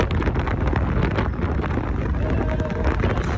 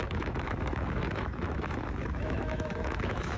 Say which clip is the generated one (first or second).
second